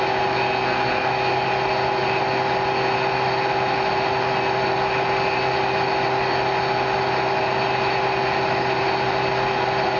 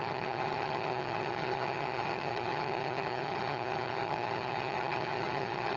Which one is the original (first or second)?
first